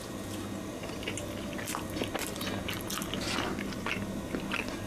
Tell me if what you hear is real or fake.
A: real